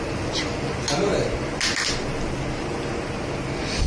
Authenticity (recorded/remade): recorded